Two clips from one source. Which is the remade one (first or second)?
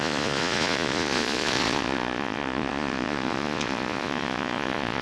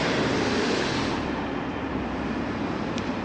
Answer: first